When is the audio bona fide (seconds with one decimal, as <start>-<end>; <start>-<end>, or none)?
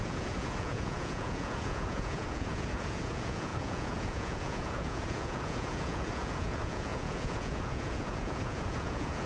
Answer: none